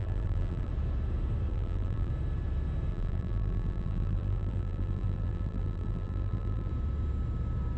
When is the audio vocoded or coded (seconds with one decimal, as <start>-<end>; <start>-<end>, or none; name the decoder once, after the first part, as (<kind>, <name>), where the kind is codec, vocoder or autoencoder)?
0.0-0.7 (vocoder, BigVGAN v2); 1.5-2.1; 2.9-6.7